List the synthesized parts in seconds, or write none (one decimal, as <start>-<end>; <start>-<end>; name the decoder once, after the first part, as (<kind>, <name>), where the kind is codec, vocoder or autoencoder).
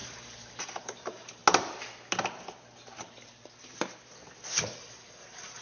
0.0-1.4 (vocoder, BigVGAN v2); 4.8-5.6